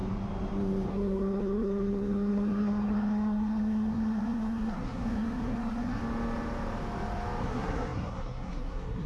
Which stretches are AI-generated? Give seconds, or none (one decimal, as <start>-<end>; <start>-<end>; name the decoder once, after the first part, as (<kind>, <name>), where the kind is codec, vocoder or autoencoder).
0.9-6.0 (codec, SNAC); 7.4-9.1